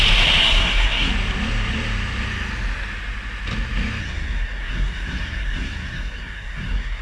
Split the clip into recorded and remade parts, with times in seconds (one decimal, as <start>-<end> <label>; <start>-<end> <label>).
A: 0.0-0.4 recorded; 0.4-1.1 remade; 1.1-4.0 recorded; 4.0-7.0 remade